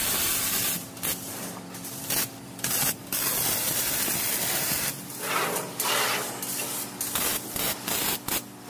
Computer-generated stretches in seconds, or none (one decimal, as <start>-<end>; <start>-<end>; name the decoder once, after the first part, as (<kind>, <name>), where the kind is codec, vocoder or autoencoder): none